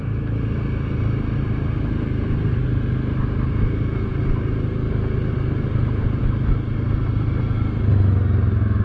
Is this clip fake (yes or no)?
no